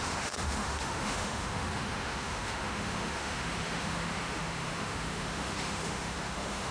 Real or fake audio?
fake